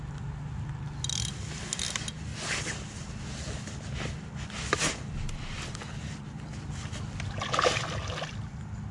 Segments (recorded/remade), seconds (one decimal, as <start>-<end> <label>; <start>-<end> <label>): 0.0-8.9 recorded